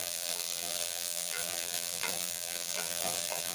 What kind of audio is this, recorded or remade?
remade